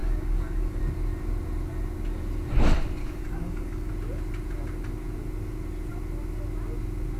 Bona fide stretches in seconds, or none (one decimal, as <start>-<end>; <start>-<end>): 0.8-3.0; 3.9-7.2